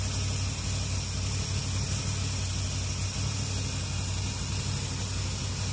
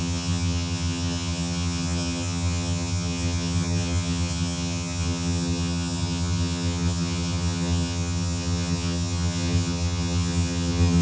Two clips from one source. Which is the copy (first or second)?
second